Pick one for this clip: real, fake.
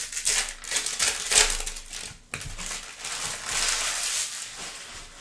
real